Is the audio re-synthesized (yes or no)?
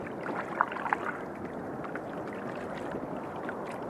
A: no